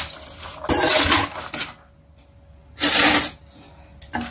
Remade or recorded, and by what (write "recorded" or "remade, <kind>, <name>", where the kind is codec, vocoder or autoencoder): recorded